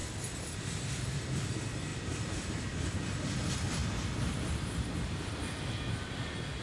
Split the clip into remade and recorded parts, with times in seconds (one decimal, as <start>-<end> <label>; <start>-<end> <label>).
0.0-0.5 recorded; 0.5-3.8 remade; 3.8-5.2 recorded; 5.2-6.6 remade

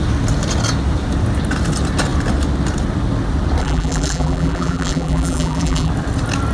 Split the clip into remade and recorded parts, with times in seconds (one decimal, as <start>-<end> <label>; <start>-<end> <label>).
0.0-3.6 recorded; 3.6-5.9 remade; 5.9-6.5 recorded

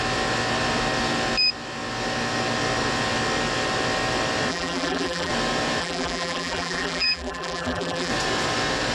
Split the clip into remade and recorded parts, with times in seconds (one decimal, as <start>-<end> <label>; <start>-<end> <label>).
0.0-4.5 recorded; 4.5-5.3 remade; 5.3-5.8 recorded; 5.8-8.1 remade; 8.1-8.9 recorded

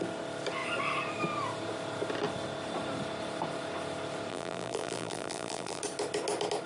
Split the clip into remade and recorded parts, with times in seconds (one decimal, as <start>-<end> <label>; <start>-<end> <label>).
0.0-4.3 recorded; 4.3-5.8 remade; 5.8-6.7 recorded